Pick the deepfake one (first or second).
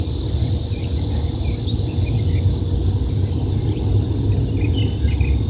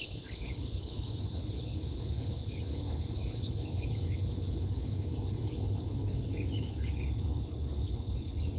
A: second